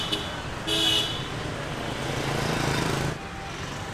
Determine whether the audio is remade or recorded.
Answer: recorded